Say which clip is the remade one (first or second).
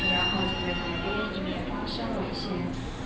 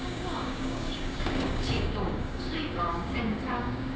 second